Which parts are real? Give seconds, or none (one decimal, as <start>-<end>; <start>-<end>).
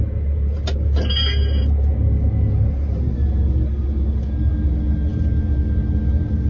0.0-6.5